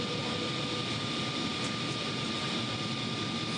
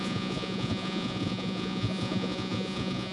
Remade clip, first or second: second